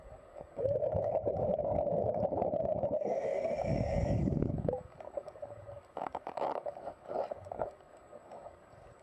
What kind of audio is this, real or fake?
fake